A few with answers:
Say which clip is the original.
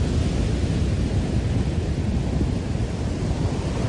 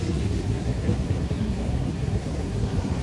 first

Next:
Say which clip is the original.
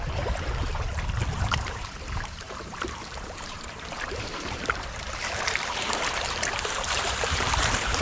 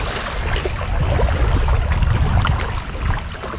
second